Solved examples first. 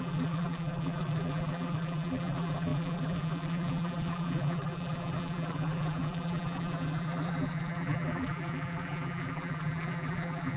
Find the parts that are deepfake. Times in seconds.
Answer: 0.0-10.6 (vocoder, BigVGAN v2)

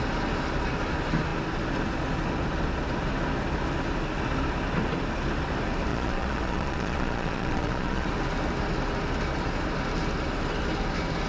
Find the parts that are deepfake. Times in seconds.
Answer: 5.9-8.1 (vocoder, Vocos)

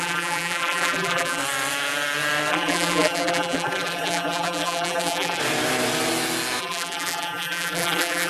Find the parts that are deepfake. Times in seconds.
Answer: 0.0-1.4 (vocoder, BigVGAN v2); 2.5-5.4; 6.6-8.3

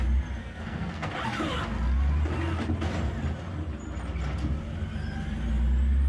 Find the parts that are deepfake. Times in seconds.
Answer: 0.4-1.1 (codec, SNAC)

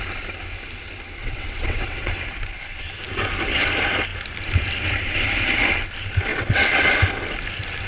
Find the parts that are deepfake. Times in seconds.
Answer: 1.2-2.1 (vocoder, WaveNeXt); 6.3-6.9